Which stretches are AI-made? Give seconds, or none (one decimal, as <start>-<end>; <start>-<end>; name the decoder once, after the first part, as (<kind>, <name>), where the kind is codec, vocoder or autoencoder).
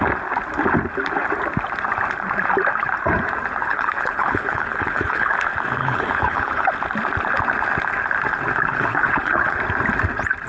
3.6-5.3 (codec, HILCodec); 5.8-6.7; 8.7-9.6